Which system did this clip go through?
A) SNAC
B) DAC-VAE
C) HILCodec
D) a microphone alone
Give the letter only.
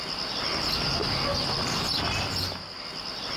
D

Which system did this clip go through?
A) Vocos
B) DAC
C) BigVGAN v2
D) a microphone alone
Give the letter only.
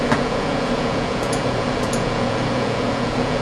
A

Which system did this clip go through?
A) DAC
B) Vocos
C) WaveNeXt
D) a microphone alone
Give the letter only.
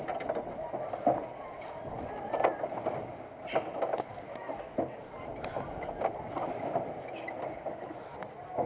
D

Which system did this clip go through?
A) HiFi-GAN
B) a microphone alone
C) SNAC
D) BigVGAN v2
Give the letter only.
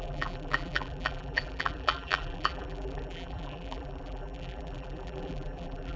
D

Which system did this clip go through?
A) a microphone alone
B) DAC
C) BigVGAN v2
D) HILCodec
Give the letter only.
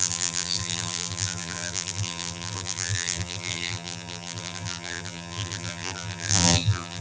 C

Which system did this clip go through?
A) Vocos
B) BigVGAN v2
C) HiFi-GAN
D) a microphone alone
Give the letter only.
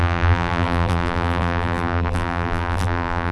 B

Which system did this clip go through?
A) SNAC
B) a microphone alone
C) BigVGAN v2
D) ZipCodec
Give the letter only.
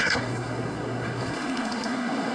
A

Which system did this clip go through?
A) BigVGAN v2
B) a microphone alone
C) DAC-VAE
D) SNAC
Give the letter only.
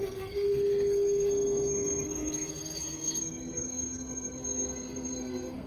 D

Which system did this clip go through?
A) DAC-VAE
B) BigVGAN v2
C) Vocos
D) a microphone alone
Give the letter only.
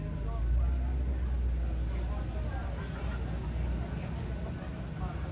D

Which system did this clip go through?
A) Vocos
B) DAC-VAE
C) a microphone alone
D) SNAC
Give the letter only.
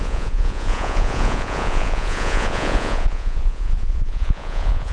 A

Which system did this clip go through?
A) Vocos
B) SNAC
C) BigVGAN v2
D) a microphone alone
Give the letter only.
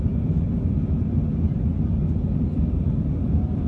D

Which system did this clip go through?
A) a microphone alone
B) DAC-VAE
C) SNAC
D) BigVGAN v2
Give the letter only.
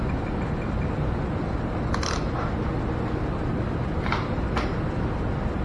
A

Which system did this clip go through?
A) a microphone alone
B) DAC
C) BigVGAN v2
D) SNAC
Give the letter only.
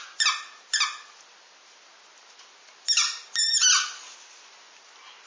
A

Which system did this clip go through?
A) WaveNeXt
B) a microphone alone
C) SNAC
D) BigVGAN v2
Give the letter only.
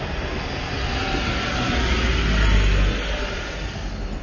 B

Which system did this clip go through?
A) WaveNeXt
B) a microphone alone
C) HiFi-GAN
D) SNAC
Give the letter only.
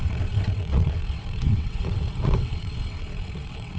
A